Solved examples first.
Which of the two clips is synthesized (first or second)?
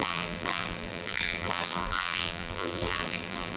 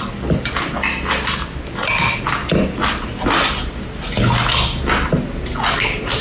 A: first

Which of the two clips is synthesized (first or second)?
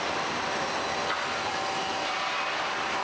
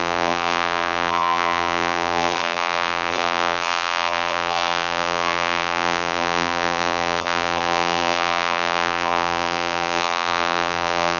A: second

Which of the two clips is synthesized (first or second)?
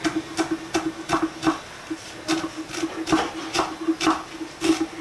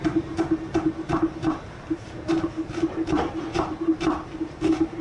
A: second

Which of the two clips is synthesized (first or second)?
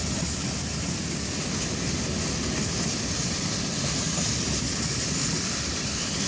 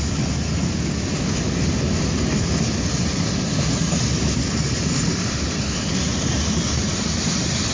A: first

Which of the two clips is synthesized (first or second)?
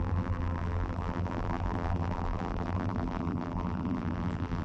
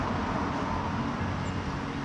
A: first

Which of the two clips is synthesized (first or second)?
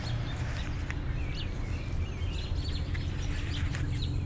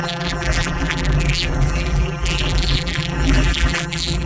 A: second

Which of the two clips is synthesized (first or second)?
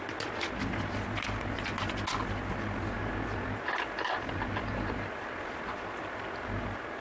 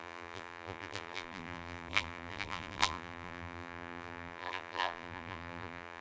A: second